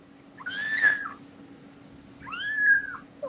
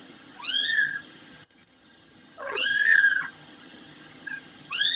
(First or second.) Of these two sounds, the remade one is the second